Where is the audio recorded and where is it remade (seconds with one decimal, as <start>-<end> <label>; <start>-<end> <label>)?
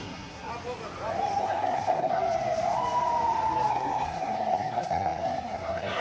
0.0-0.5 remade; 0.5-1.4 recorded; 1.4-2.2 remade; 2.2-3.7 recorded; 3.7-6.0 remade